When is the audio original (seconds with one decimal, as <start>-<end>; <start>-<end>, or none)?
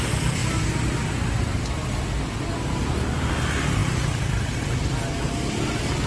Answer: 0.0-6.1